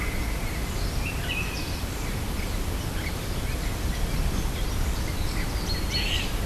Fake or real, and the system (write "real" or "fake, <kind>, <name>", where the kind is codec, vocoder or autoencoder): fake, vocoder, BigVGAN v2